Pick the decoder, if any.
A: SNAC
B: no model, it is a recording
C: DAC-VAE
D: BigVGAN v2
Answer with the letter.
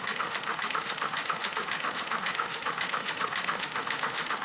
C